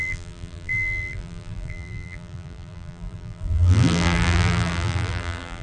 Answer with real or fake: fake